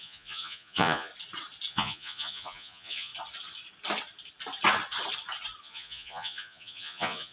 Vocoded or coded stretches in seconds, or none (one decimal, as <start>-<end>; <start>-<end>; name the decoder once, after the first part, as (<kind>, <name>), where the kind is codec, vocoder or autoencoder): 0.0-1.1 (vocoder, Vocos); 1.7-3.1; 5.6-7.3